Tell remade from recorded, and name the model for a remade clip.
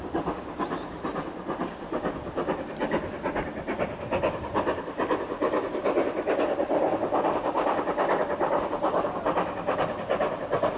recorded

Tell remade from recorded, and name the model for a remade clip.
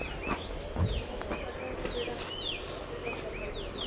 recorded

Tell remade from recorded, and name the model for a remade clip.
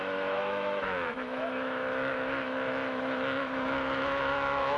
remade, autoencoder, DAC-VAE